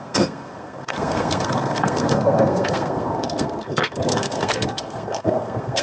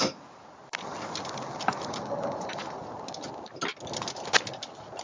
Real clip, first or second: second